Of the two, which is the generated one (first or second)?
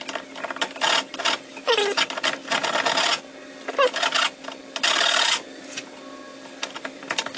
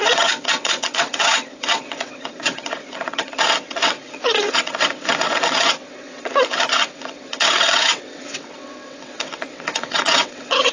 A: second